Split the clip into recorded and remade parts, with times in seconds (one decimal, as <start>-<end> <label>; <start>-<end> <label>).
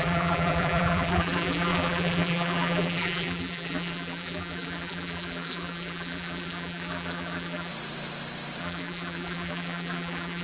0.0-7.7 remade; 7.7-8.6 recorded; 8.6-10.4 remade